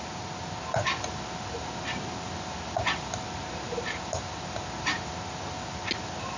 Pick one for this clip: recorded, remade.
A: recorded